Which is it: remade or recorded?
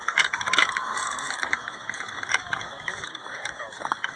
remade